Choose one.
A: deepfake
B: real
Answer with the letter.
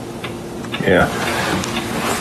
B